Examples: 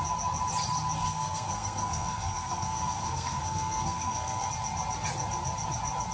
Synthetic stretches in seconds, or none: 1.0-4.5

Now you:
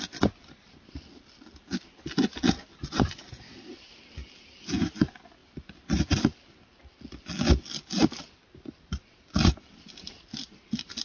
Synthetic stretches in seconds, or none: none

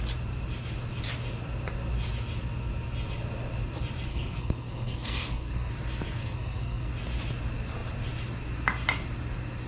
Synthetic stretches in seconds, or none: 4.1-5.7; 6.2-6.9

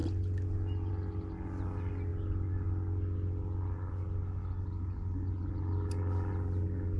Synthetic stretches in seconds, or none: none

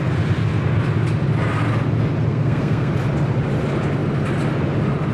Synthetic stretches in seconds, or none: 2.3-2.9